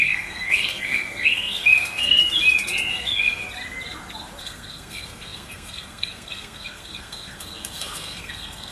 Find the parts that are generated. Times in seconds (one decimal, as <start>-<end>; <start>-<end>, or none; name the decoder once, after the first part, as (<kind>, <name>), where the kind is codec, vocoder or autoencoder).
0.0-2.2 (codec, SNAC); 2.9-3.4; 4.4-8.7